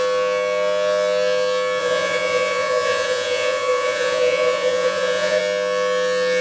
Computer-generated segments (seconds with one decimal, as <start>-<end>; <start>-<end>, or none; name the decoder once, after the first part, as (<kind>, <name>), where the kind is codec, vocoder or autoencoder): 1.8-5.4 (vocoder, Vocos)